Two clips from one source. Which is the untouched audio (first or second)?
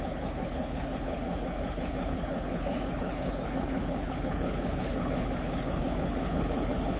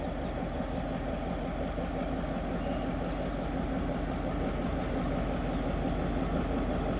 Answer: second